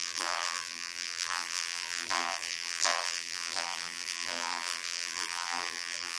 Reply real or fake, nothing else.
fake